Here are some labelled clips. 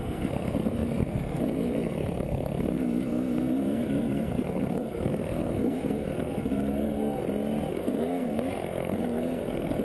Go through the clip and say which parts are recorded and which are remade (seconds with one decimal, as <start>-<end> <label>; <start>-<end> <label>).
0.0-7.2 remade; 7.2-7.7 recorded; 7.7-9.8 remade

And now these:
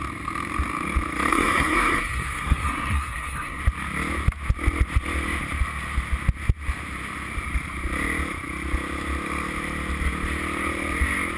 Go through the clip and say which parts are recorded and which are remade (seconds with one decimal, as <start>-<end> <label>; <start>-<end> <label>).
0.0-1.3 recorded; 1.3-3.6 remade; 3.6-11.4 recorded

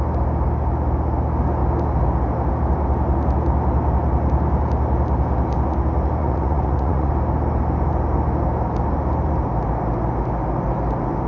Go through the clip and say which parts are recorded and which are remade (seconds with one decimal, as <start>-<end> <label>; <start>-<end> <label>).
0.0-6.2 recorded; 6.2-7.1 remade; 7.1-11.3 recorded

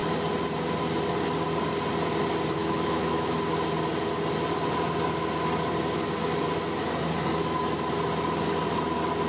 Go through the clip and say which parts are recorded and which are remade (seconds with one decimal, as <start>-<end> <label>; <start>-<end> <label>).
0.0-2.6 recorded; 2.6-3.3 remade; 3.3-9.3 recorded

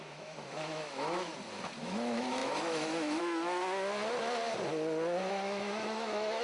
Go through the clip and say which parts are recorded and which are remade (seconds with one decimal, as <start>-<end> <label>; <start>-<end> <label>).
0.0-1.3 remade; 1.3-1.8 recorded; 1.8-3.6 remade; 3.6-5.3 recorded; 5.3-6.4 remade